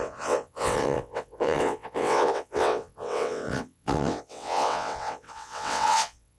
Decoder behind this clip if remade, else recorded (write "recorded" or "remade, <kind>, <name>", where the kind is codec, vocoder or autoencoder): remade, vocoder, WaveNeXt